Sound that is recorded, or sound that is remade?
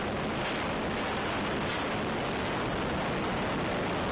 recorded